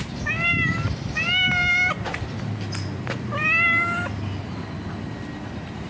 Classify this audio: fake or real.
real